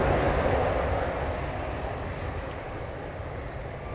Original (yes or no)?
yes